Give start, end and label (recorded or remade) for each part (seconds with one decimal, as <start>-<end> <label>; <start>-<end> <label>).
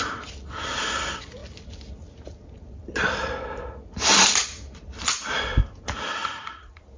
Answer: 0.0-6.2 recorded; 6.2-7.0 remade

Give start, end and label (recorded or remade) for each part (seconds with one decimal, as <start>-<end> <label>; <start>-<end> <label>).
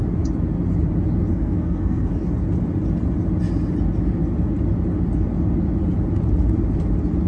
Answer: 0.0-1.3 recorded; 1.3-2.1 remade; 2.1-7.3 recorded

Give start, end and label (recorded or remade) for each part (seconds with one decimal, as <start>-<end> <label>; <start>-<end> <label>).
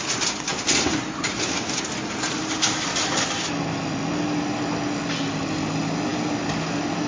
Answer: 0.0-6.1 recorded; 6.1-7.1 remade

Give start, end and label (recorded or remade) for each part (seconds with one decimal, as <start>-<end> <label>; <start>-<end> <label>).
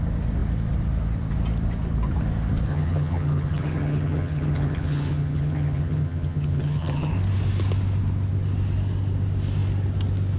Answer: 0.0-2.7 recorded; 2.7-7.1 remade; 7.1-10.4 recorded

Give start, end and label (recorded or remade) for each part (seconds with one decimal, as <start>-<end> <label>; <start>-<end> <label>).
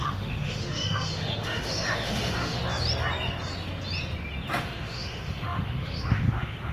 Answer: 0.0-2.6 remade; 2.6-4.6 recorded; 4.6-6.7 remade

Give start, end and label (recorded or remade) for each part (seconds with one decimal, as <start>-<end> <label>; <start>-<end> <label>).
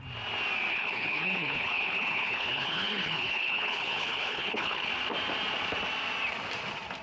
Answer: 0.0-0.7 recorded; 0.7-4.9 remade; 4.9-7.0 recorded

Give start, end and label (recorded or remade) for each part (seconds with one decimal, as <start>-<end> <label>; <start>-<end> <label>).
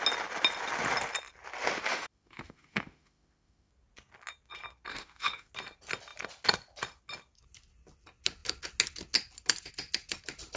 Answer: 0.0-1.9 recorded; 1.9-3.7 remade; 3.7-4.9 recorded; 4.9-5.5 remade; 5.5-10.6 recorded